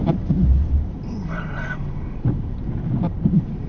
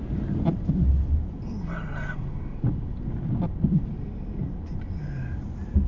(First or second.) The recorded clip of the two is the second